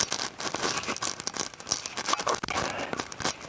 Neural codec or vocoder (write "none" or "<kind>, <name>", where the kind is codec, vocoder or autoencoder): none